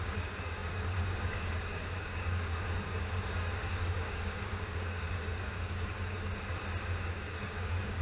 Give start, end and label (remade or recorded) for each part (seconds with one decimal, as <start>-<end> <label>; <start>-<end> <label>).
0.0-6.3 remade; 6.3-7.0 recorded; 7.0-8.0 remade